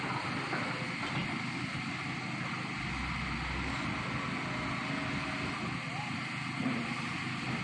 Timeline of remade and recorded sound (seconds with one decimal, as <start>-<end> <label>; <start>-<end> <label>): 0.0-7.6 recorded